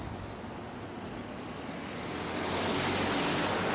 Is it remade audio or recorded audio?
recorded